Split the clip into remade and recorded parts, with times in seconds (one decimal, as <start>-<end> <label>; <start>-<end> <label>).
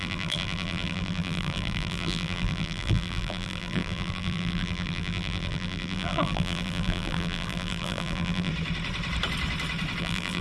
0.0-8.5 remade; 8.5-10.0 recorded; 10.0-10.4 remade